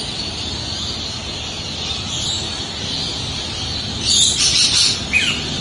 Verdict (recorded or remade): recorded